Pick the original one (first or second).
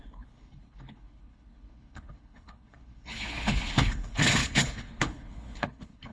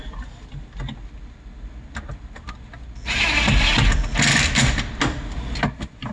second